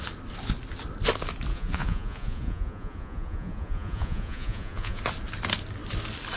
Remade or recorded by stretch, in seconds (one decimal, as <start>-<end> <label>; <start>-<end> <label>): 0.0-1.5 recorded; 1.5-5.0 remade; 5.0-6.4 recorded